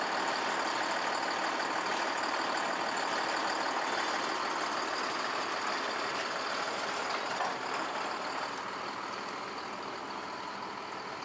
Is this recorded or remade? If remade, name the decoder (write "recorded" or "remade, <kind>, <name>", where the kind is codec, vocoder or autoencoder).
recorded